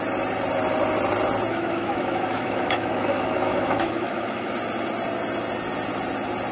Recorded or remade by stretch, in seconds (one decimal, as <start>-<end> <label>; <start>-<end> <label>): 0.0-1.5 recorded; 1.5-4.5 remade; 4.5-6.5 recorded